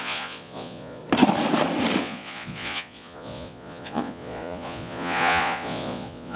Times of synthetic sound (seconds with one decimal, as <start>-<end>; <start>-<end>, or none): 0.0-1.0; 2.0-6.4